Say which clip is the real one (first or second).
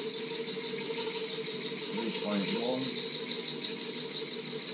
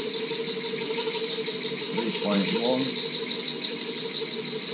first